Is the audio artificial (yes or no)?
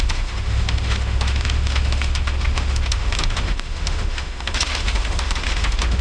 yes